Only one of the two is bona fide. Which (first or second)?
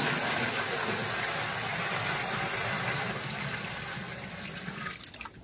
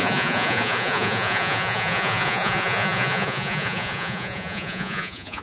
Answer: first